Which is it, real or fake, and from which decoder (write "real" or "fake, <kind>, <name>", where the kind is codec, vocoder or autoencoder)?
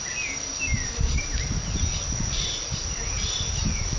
real